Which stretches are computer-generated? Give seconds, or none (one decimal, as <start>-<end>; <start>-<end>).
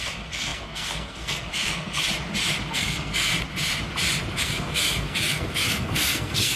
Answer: 0.0-2.0; 2.7-3.3; 4.4-6.6